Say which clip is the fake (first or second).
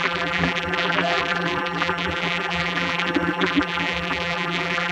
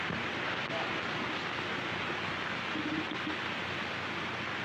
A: first